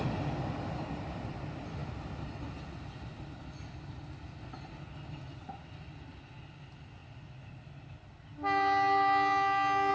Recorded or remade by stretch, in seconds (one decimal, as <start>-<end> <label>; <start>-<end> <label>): 0.0-9.9 recorded